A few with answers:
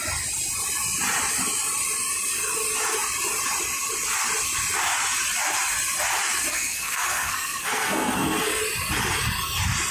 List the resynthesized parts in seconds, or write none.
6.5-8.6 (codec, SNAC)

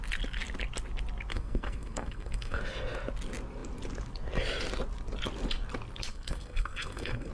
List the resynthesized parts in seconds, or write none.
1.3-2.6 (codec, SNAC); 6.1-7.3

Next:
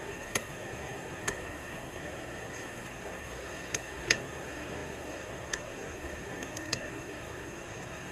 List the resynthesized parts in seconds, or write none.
0.0-8.1 (codec, SNAC)

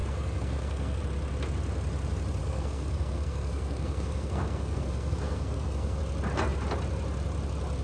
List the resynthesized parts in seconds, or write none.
0.0-1.0 (codec, SNAC); 2.4-6.0

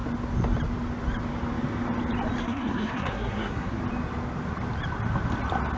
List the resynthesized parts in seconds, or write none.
2.4-3.8 (codec, SNAC)

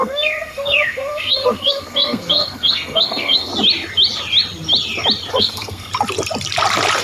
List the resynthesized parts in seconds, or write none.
0.0-3.5 (codec, SNAC); 5.3-5.9

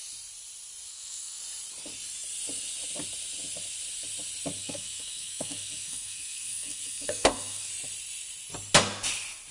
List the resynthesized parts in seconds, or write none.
0.9-1.4 (codec, SNAC); 4.6-7.7

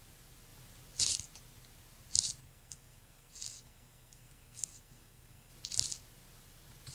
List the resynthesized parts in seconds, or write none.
2.4-5.5 (codec, SNAC)